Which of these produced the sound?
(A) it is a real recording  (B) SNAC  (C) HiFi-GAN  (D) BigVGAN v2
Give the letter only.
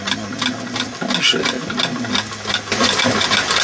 A